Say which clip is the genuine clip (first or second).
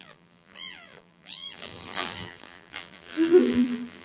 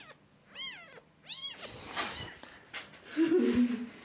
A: second